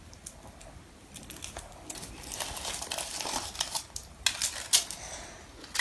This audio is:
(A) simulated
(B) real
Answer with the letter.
B